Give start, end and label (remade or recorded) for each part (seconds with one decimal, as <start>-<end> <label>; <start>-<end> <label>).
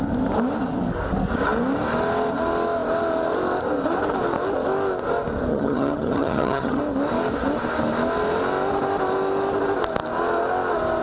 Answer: 0.0-5.5 recorded; 5.5-6.8 remade; 6.8-11.0 recorded